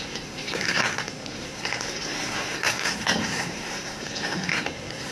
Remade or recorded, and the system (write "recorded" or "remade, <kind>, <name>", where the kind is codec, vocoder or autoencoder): remade, codec, SNAC